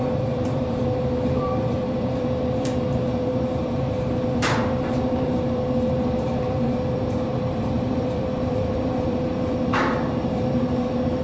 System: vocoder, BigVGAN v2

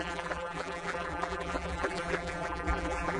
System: vocoder, BigVGAN v2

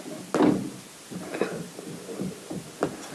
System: none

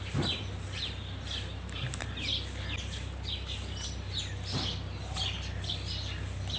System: none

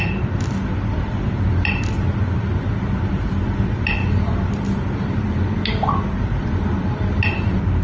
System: vocoder, BigVGAN v2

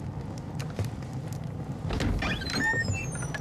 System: none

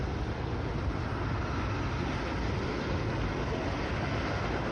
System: none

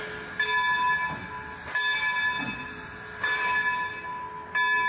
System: none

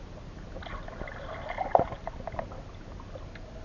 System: none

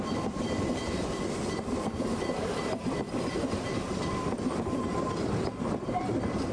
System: vocoder, BigVGAN v2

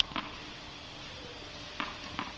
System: vocoder, BigVGAN v2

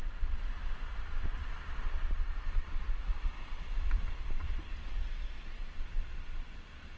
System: none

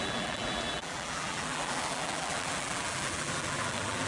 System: vocoder, BigVGAN v2